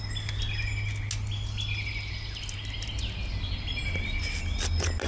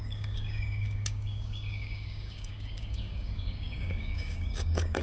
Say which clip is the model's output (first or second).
second